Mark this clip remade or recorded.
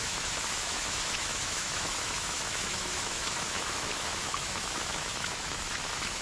remade